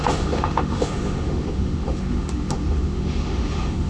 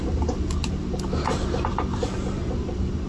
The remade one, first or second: first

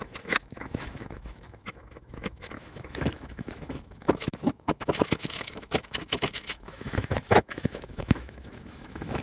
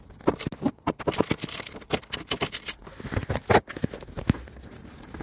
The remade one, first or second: first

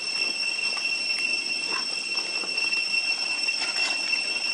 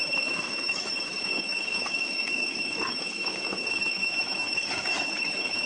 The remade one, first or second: second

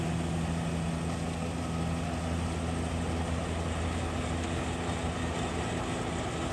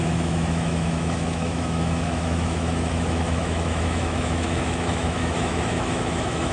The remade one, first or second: second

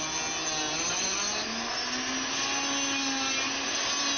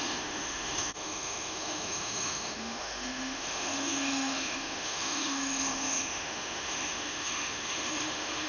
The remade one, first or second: second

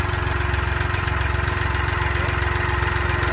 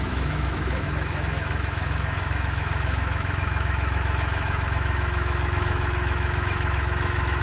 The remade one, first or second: second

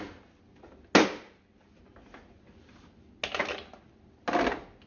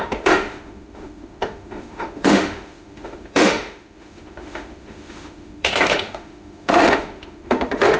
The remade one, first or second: second